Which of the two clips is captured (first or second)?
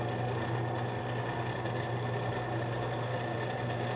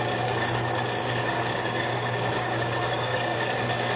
first